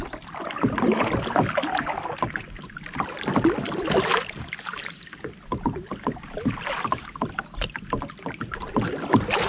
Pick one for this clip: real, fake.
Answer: real